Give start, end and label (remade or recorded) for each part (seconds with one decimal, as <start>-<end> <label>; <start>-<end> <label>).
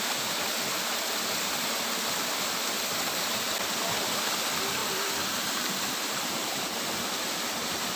0.0-4.8 recorded; 4.8-7.5 remade; 7.5-8.0 recorded